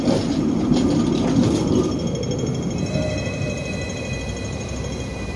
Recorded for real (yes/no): yes